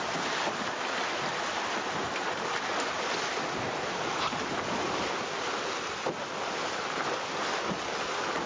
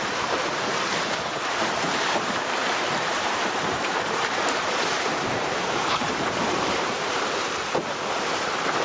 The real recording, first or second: first